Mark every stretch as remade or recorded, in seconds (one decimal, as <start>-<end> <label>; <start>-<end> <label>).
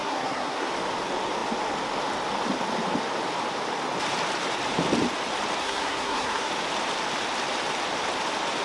0.0-0.7 remade; 0.7-5.6 recorded; 5.6-6.5 remade; 6.5-8.6 recorded